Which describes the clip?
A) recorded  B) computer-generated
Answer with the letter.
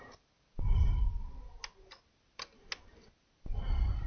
A